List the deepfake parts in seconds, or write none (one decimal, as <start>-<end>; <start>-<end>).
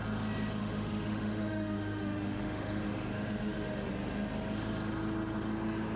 0.6-3.9